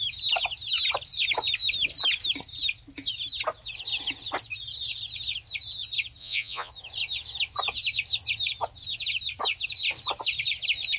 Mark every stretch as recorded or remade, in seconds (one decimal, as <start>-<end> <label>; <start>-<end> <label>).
0.0-6.2 recorded; 6.2-6.7 remade; 6.7-11.0 recorded